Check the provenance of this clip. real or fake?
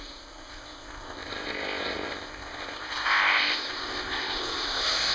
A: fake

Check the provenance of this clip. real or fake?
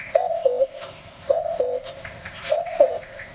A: fake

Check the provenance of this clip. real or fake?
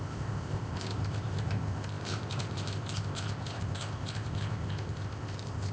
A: fake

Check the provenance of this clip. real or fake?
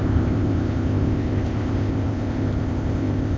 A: fake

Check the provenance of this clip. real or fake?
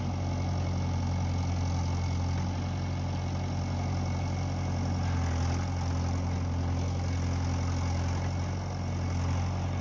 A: real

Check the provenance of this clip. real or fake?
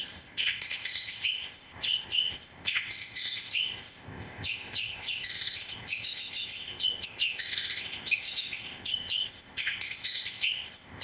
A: fake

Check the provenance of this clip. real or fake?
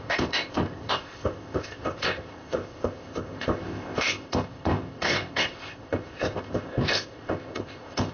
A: fake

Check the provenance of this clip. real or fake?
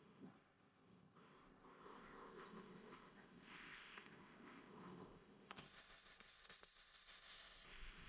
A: fake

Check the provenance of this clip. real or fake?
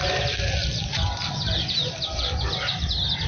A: real